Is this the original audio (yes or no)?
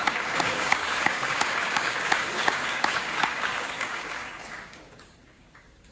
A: no